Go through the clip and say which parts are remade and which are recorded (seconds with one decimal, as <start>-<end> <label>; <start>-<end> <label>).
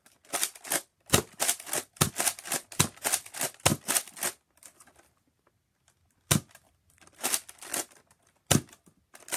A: 0.0-0.9 recorded; 0.9-2.1 remade; 2.1-9.4 recorded